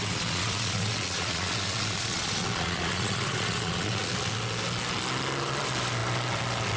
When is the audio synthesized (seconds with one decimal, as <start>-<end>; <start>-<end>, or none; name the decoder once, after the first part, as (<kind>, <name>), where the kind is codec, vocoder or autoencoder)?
0.0-4.1 (vocoder, Vocos)